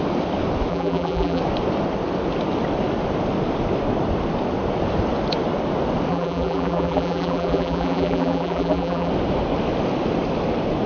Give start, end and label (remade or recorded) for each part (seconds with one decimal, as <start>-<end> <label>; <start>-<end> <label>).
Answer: 0.0-0.7 recorded; 0.7-1.4 remade; 1.4-6.1 recorded; 6.1-9.1 remade; 9.1-10.9 recorded